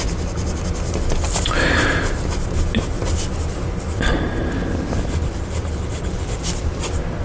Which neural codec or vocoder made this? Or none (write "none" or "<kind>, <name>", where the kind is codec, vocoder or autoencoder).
none